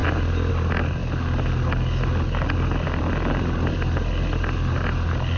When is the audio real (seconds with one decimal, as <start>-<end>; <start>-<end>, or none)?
0.0-5.4